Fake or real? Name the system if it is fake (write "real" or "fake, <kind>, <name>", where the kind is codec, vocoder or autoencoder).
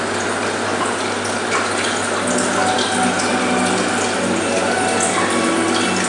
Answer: real